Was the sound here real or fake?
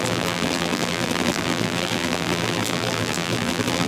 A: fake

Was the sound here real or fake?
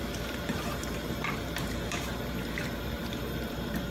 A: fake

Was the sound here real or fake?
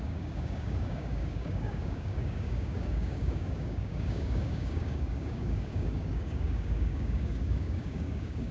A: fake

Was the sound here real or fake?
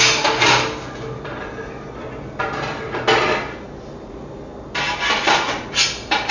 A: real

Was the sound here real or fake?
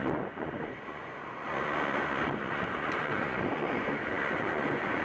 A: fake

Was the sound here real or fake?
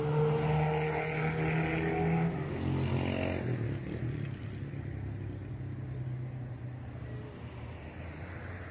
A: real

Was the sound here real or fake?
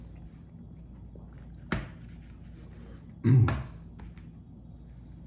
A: real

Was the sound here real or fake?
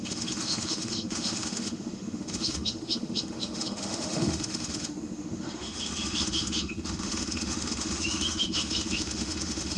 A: fake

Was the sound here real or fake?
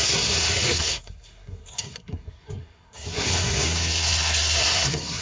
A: fake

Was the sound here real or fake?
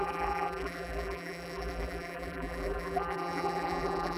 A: fake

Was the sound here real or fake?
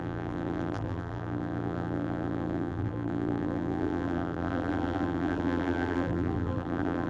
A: fake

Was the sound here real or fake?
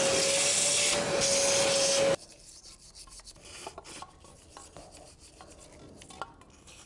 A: real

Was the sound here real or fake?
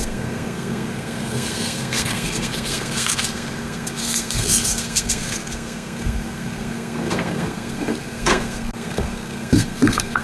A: fake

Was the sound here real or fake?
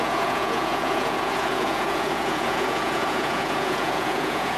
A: fake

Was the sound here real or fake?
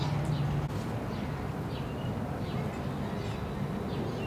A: real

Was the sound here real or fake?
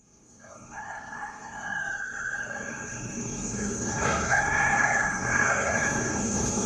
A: fake